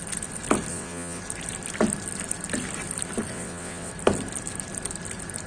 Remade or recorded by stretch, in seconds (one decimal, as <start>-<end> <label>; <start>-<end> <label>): 0.0-0.7 recorded; 0.7-1.2 remade; 1.2-3.3 recorded; 3.3-3.9 remade; 3.9-5.5 recorded